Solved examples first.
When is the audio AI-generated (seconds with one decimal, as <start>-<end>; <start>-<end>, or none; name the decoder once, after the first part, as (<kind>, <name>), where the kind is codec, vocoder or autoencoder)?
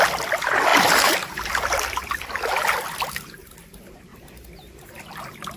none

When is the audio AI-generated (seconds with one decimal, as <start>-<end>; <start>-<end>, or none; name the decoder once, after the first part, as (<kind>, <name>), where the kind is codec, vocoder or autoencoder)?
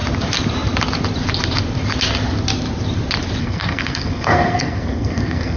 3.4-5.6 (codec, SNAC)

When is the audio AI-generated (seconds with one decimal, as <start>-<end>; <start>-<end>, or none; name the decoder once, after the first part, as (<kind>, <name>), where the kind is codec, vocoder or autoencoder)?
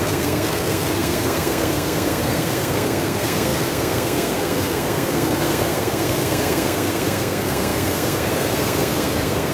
0.0-9.5 (codec, SNAC)